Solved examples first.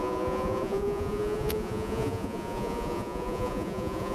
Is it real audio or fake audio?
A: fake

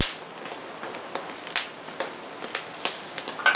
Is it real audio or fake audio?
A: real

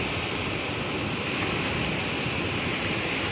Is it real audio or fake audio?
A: real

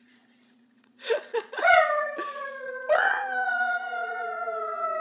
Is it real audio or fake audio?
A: fake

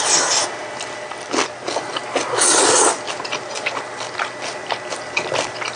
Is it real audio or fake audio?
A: real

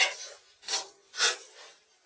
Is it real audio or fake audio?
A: real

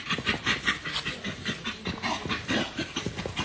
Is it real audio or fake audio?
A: real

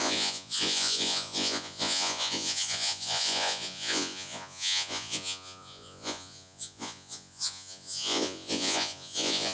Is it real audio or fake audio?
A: fake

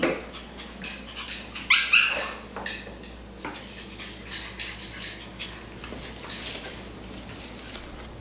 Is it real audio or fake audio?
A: real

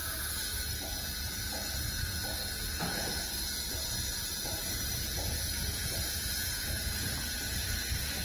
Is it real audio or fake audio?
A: fake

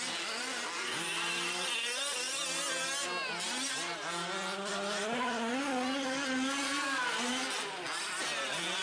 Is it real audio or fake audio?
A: real